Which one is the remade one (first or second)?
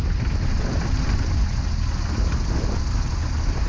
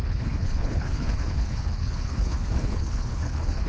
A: second